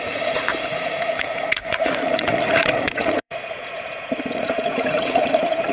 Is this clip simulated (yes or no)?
yes